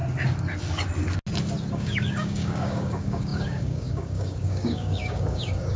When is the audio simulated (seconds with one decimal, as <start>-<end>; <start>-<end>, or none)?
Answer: 1.7-5.8